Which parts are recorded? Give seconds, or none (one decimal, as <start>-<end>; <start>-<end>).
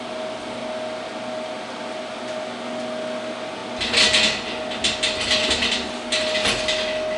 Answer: 0.0-7.2